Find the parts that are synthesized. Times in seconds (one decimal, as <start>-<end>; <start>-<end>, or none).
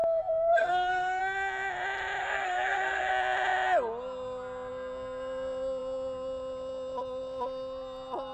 0.0-1.2; 2.2-3.1